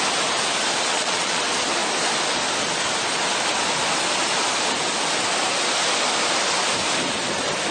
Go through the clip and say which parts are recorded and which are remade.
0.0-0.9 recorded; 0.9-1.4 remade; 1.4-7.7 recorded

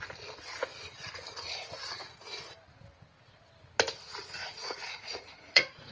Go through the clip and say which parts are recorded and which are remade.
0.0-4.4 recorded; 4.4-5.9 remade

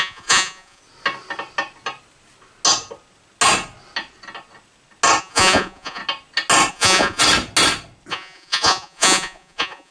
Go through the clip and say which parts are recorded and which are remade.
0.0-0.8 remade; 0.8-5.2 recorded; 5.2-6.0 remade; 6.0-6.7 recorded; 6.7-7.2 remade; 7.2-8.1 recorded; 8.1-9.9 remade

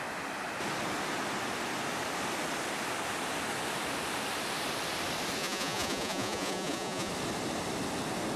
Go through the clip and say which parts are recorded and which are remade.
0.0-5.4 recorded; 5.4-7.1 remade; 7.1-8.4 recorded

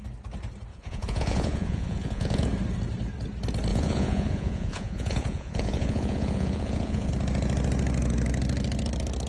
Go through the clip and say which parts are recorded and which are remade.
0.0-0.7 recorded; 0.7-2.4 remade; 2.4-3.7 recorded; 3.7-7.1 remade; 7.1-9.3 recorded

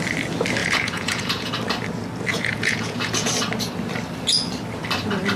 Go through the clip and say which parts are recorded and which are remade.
0.0-0.6 recorded; 0.6-1.5 remade; 1.5-2.3 recorded; 2.3-3.3 remade; 3.3-5.4 recorded

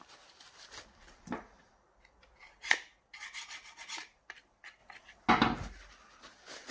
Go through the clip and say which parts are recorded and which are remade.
0.0-6.7 recorded